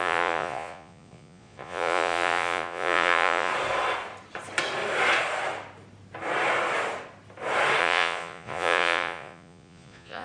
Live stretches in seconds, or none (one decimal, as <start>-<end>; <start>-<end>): 3.5-7.8